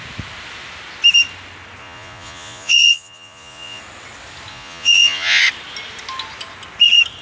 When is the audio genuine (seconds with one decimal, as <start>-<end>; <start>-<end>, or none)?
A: 0.0-1.8; 3.8-4.5; 5.4-7.2